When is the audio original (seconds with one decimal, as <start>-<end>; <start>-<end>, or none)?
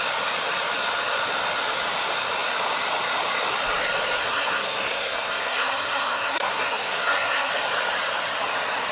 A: 0.0-4.2; 7.5-8.9